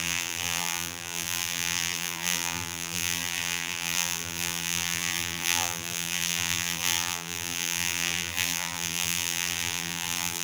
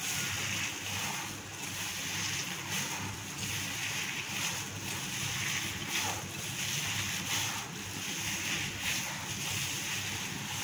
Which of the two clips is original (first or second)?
second